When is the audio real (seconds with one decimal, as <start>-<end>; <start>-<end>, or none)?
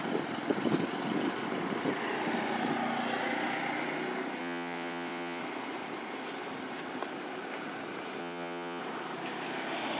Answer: 0.0-4.4; 5.4-8.2; 8.8-10.0